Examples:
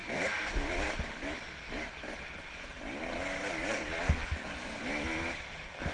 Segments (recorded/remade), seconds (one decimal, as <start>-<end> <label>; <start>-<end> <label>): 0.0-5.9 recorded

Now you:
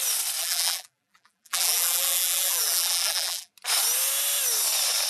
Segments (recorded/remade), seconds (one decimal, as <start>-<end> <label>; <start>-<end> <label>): 0.0-0.4 recorded; 0.4-3.5 remade; 3.5-5.1 recorded

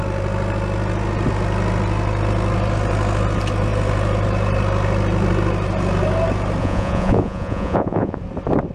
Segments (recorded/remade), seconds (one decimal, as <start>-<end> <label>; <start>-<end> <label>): 0.0-6.6 recorded; 6.6-8.2 remade; 8.2-8.7 recorded